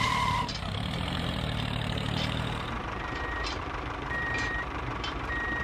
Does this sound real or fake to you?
fake